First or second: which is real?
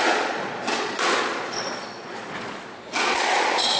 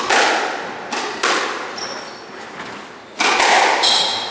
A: second